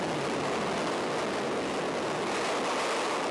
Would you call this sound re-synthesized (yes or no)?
no